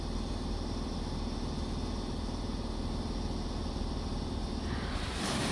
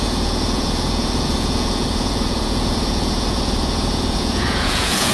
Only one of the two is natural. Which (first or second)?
first